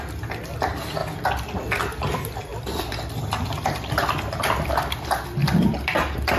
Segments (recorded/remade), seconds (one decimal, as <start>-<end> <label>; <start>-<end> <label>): 0.0-2.5 recorded; 2.5-6.4 remade